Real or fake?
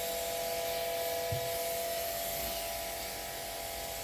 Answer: real